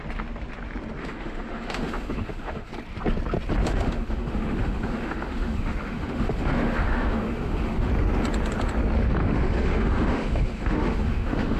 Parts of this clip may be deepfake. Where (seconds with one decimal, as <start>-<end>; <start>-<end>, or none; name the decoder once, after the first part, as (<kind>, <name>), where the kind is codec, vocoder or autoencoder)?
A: 1.0-2.7 (autoencoder, DAC-VAE); 3.6-7.9; 9.2-11.6